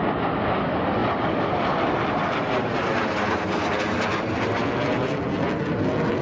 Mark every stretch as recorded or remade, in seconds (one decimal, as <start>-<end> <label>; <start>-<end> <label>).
0.0-6.2 recorded